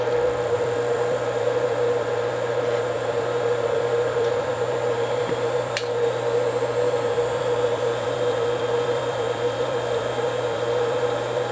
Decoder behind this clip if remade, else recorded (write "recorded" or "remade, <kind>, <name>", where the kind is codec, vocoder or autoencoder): remade, vocoder, BigVGAN v2